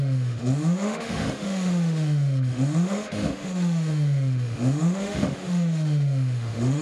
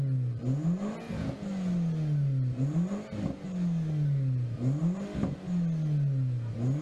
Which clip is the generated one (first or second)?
first